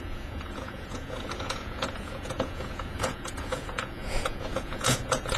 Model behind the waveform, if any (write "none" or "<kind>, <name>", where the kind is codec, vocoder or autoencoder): vocoder, Vocos